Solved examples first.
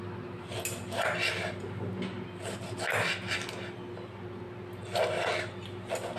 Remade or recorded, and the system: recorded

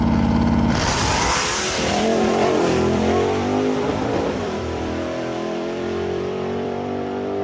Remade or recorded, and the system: remade, vocoder, BigVGAN v2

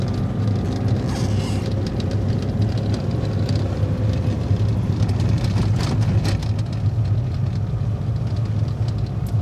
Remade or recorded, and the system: recorded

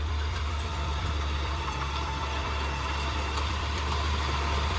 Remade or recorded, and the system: remade, vocoder, BigVGAN v2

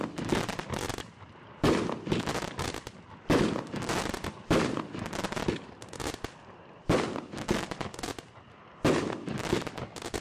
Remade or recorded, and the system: recorded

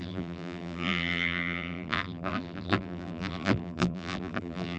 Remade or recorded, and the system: remade, vocoder, BigVGAN v2